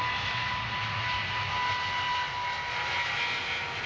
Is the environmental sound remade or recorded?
recorded